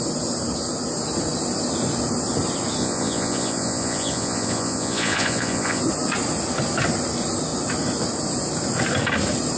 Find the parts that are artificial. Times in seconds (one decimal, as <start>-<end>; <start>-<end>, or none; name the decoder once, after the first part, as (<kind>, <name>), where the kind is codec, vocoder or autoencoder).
2.8-5.8 (vocoder, Vocos)